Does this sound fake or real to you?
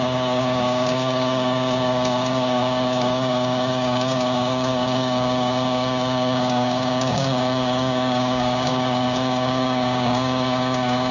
fake